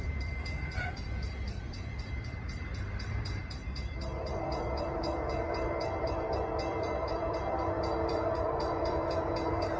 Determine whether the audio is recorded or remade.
remade